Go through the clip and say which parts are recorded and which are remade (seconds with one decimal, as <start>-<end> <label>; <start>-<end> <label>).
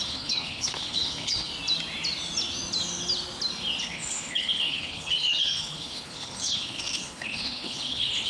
0.0-1.5 remade; 1.5-3.8 recorded; 3.8-8.3 remade